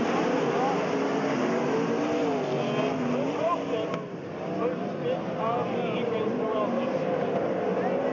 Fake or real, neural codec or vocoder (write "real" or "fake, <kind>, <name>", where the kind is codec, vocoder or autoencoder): real